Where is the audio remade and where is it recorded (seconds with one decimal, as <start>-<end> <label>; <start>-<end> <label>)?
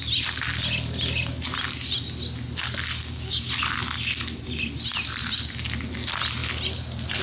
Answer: 0.0-3.0 recorded; 3.0-3.5 remade; 3.5-7.2 recorded